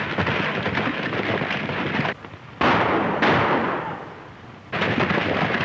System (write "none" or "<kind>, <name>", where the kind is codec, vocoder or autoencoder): none